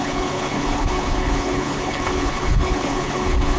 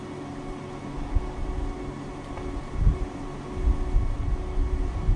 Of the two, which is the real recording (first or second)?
second